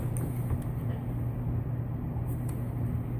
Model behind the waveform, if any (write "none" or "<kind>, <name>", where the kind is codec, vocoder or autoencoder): none